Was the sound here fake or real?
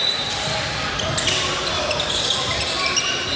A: real